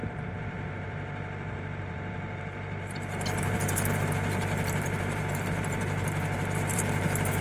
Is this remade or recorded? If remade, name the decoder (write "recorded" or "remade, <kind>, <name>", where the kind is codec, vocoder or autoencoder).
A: remade, vocoder, BigVGAN v2